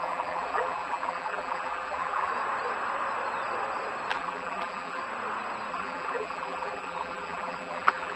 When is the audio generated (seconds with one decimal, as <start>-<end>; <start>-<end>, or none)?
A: 0.0-2.3; 4.1-5.0; 5.7-8.2